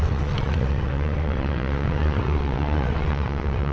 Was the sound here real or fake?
fake